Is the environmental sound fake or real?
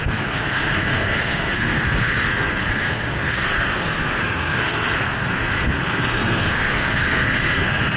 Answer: fake